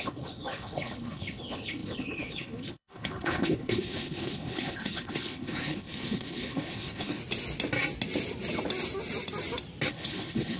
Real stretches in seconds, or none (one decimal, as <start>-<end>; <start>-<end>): 7.2-9.9